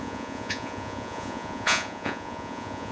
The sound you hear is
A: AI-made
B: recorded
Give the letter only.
A